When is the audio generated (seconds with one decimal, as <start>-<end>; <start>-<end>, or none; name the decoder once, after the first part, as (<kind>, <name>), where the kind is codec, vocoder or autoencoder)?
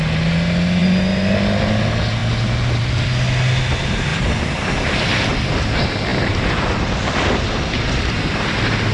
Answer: 4.1-4.7 (vocoder, BigVGAN v2)